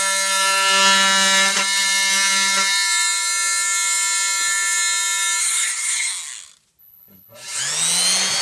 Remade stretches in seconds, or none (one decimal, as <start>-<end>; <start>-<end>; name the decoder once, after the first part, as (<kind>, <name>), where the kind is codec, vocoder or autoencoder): 5.4-6.1 (codec, HILCodec); 6.8-7.6